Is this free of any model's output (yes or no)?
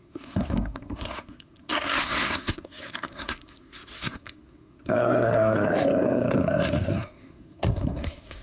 no